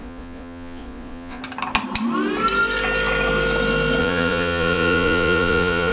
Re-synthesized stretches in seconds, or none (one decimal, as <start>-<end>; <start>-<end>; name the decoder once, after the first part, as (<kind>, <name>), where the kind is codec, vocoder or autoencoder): 0.0-1.4 (vocoder, Vocos); 4.0-5.9